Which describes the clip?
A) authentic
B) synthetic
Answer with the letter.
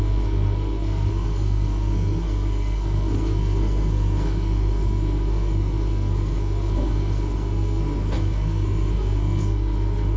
B